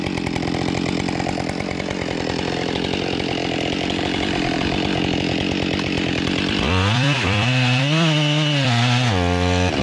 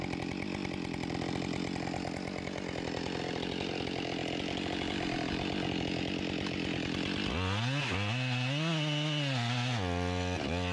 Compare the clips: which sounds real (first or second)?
second